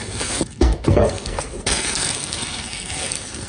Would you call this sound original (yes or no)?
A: no